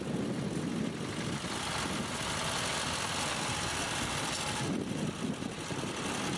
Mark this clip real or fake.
real